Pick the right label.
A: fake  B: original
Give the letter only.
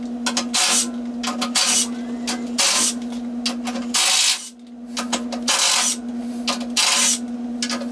B